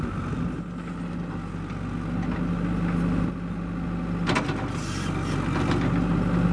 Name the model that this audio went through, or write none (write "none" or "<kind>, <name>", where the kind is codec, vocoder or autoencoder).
none